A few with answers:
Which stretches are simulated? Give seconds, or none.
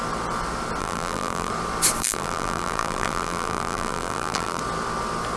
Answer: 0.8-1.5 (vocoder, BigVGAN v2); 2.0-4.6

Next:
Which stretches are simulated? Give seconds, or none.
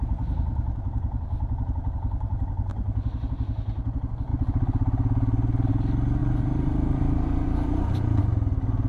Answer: 6.2-8.2 (vocoder, BigVGAN v2)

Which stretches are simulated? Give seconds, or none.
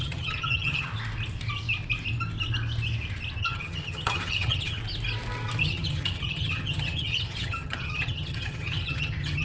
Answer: 0.0-0.9 (vocoder, HiFi-GAN); 3.4-4.8; 5.6-9.4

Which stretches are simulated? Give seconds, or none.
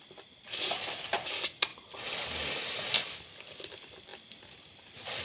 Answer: none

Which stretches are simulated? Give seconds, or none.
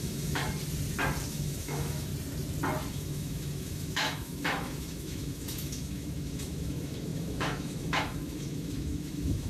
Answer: 0.0-0.4 (autoencoder, DAC-VAE); 1.3-2.1; 2.9-9.5